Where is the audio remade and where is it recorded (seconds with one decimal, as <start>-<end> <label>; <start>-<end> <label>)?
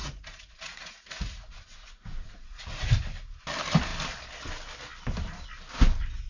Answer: 0.0-2.6 remade; 2.6-6.3 recorded